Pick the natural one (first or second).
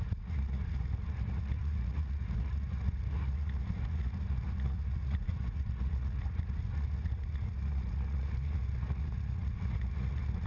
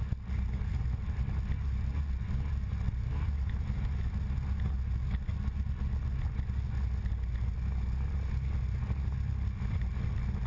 second